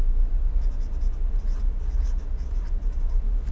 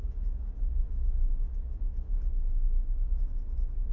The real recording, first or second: first